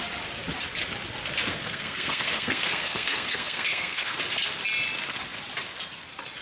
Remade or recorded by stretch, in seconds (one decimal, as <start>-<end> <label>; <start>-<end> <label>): 0.0-1.5 recorded; 1.5-4.2 remade; 4.2-6.4 recorded